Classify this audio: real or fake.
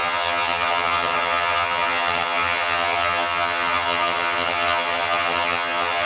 fake